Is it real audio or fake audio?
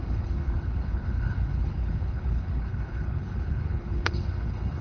fake